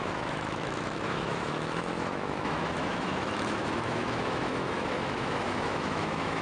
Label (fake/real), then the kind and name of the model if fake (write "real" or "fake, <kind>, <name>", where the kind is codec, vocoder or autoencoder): fake, autoencoder, DAC-VAE